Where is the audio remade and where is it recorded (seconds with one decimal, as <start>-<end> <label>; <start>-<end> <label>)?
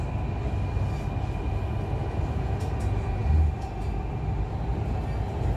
0.0-5.6 recorded